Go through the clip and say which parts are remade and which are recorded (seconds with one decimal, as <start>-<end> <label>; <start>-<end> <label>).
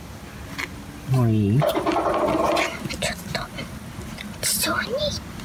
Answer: 0.0-5.4 recorded